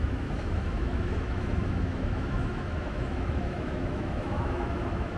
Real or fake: fake